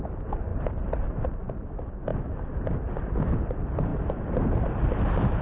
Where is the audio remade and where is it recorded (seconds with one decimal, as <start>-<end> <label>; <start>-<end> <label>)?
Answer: 0.0-0.5 recorded; 0.5-1.3 remade; 1.3-3.9 recorded; 3.9-5.0 remade; 5.0-5.4 recorded